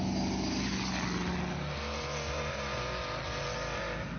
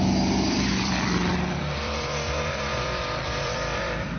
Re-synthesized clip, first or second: second